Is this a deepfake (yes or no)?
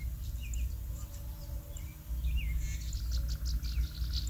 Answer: no